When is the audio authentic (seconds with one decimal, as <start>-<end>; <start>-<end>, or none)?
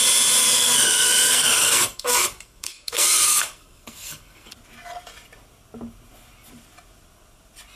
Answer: 0.0-0.4; 4.5-7.8